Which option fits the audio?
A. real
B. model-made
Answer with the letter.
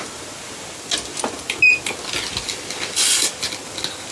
A